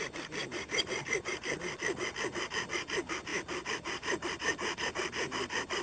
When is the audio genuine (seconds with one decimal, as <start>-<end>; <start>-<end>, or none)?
0.0-0.4; 2.1-3.3; 4.9-5.8